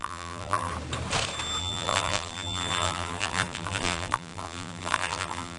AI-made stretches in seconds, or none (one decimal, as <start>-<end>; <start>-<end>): 0.0-0.7; 1.6-5.6